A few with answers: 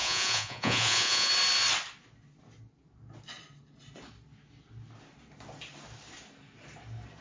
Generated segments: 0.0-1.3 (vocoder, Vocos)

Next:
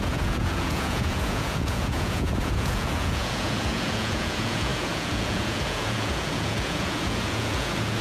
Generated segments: 0.0-8.0 (vocoder, Vocos)

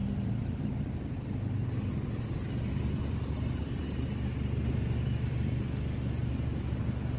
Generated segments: none

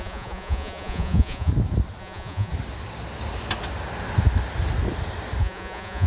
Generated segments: 0.0-1.5 (vocoder, Vocos); 2.0-2.5; 5.4-6.1

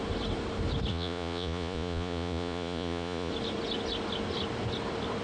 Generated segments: 0.9-3.3 (vocoder, Vocos)

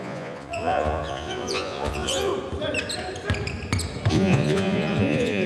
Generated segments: 0.0-2.3 (vocoder, Vocos); 4.1-5.5

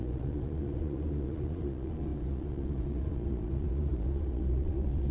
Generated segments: 0.0-5.1 (vocoder, Vocos)